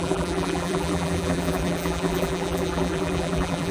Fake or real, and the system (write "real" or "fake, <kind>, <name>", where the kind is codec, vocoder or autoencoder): fake, vocoder, BigVGAN v2